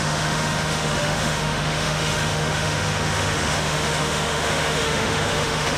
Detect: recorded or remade remade